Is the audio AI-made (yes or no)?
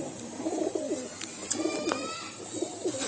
no